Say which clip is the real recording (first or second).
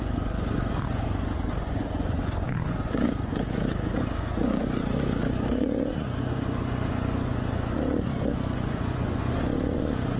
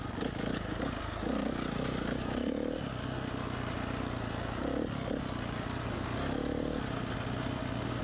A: second